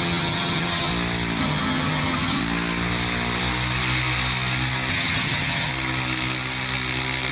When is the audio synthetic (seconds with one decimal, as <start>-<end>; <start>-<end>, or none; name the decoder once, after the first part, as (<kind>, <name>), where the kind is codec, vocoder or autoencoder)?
0.0-0.9 (vocoder, HiFi-GAN); 1.4-2.4; 4.9-5.7